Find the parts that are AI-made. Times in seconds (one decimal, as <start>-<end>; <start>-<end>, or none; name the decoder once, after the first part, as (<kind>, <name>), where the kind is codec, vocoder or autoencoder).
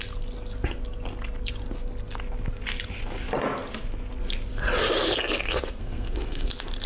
5.8-6.5 (codec, SNAC)